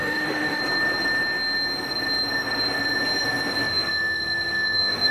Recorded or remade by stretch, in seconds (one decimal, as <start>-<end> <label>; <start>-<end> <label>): 0.0-0.6 remade; 0.6-3.7 recorded; 3.7-5.1 remade